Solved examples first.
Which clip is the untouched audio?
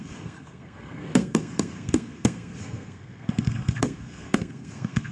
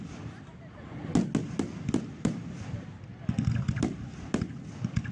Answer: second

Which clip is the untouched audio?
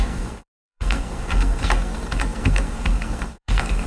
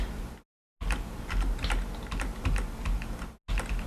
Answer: second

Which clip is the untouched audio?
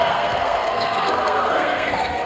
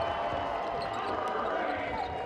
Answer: second